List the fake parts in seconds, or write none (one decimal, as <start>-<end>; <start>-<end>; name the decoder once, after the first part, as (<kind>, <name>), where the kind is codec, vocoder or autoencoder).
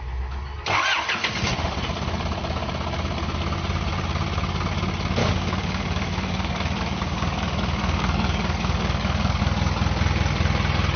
5.2-9.4 (codec, DAC)